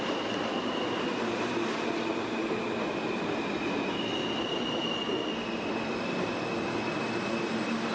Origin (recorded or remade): recorded